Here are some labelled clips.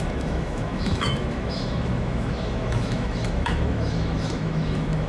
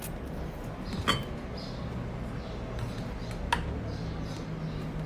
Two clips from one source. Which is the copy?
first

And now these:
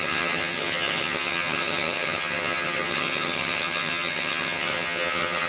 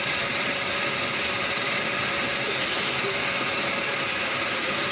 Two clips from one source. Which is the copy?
first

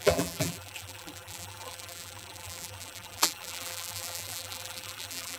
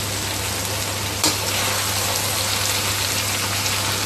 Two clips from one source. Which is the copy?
first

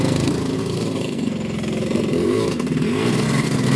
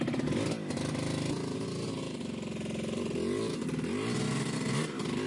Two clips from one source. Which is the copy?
first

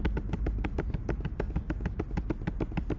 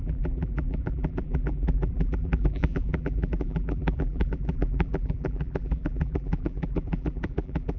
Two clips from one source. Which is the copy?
second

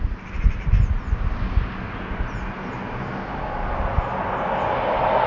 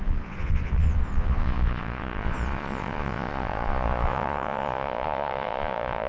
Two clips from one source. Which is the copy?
second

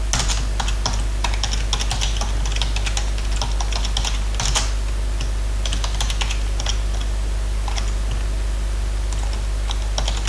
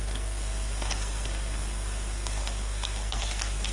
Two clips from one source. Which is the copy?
second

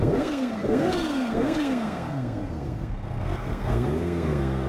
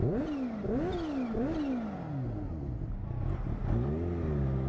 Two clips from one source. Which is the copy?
first